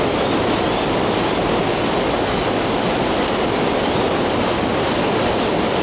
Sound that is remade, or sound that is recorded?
recorded